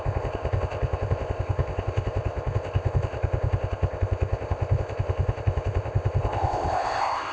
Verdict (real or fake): fake